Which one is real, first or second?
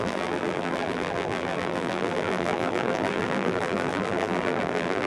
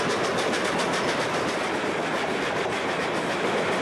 second